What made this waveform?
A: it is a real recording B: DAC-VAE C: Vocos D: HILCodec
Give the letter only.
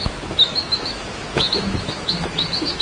B